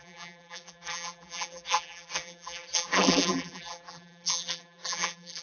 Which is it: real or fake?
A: fake